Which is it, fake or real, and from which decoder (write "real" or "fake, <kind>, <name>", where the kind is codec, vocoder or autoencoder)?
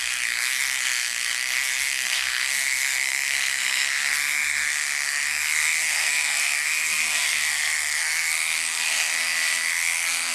fake, codec, SNAC